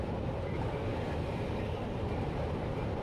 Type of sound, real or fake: real